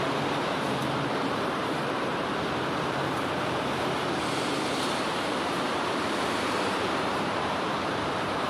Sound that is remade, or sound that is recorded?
remade